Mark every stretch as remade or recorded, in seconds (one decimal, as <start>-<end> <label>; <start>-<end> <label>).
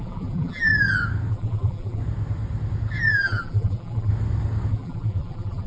0.0-0.7 remade; 0.7-1.3 recorded; 1.3-2.0 remade; 2.0-3.1 recorded; 3.1-4.1 remade; 4.1-4.7 recorded; 4.7-5.7 remade